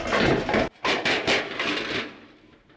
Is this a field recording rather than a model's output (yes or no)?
yes